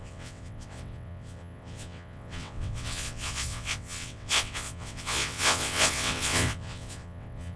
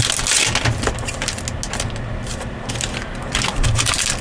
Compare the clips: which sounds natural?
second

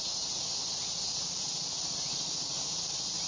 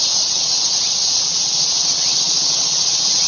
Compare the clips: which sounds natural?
first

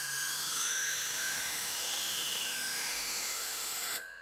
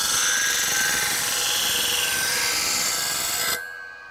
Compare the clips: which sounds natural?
second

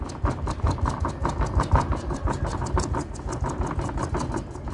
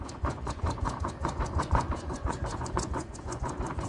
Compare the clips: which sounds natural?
first